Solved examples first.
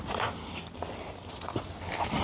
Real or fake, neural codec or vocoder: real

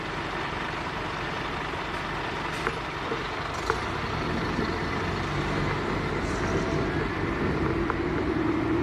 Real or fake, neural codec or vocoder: real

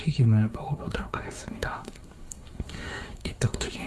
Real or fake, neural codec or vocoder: fake, codec, SNAC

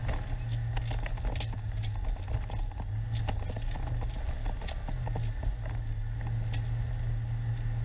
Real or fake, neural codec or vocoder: real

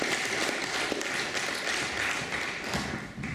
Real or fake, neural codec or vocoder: real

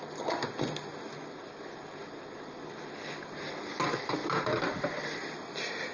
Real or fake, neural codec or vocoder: real